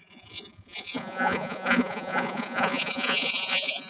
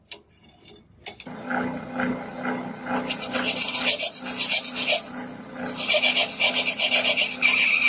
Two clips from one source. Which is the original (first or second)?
second